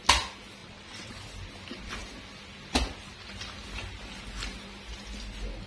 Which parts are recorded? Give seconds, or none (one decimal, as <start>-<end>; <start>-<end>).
0.0-0.6; 1.1-5.7